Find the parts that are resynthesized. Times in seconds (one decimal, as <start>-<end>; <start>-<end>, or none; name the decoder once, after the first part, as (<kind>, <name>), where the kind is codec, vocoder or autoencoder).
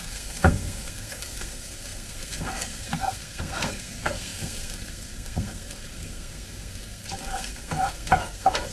0.0-8.7 (codec, SNAC)